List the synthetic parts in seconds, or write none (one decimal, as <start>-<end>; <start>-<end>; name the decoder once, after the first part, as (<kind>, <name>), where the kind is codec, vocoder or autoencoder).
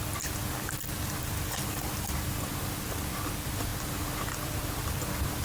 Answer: none